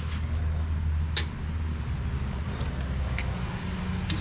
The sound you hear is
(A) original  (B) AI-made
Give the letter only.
A